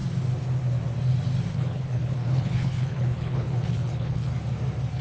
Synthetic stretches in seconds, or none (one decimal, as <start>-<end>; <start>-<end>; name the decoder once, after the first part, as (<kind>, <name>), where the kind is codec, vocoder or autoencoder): 1.5-4.3 (codec, HILCodec)